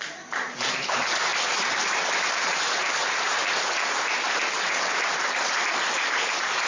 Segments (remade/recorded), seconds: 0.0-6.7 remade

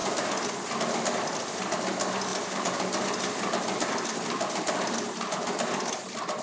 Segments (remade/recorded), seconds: 0.0-0.5 remade; 0.5-2.3 recorded; 2.3-3.9 remade; 3.9-6.4 recorded